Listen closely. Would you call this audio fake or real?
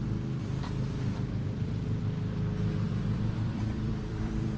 fake